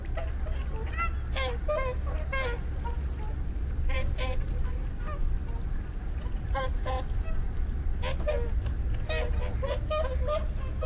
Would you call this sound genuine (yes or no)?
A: yes